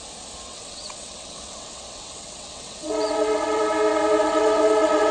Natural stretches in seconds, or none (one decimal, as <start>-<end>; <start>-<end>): 0.0-0.5; 3.6-4.2